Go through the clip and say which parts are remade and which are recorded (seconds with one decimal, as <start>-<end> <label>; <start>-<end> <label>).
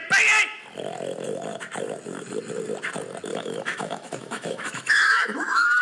0.0-3.3 recorded; 3.3-5.8 remade